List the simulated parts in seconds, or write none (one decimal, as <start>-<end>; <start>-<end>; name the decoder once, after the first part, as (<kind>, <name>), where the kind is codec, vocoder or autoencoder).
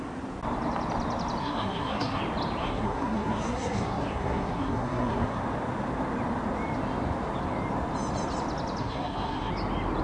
1.4-2.2 (codec, SNAC); 2.6-5.4; 8.8-9.5